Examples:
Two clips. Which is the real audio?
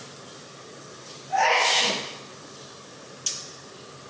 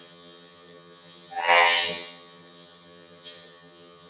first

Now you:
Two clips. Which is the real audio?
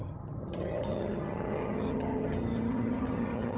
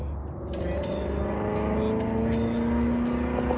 second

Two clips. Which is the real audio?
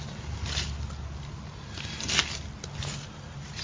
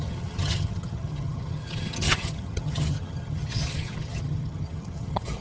first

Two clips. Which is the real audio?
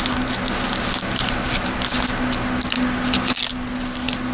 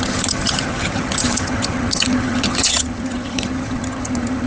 first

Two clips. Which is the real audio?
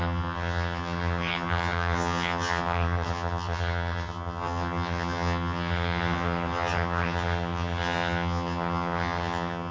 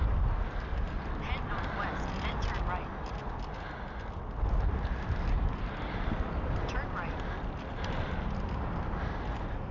second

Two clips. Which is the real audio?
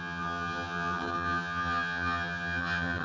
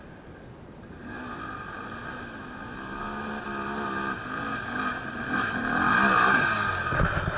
second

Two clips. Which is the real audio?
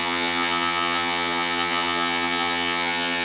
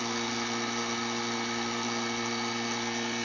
second